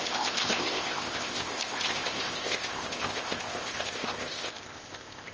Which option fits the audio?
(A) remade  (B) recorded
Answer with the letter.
A